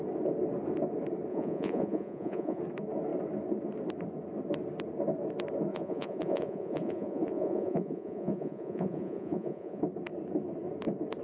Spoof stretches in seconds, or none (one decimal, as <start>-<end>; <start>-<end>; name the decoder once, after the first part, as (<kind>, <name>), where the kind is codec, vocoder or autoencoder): 1.3-2.6 (vocoder, Vocos); 5.7-9.8